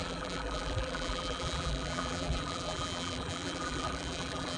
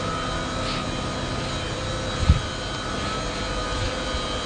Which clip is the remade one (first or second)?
first